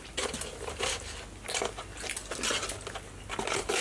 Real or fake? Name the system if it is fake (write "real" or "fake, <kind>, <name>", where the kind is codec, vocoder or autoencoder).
real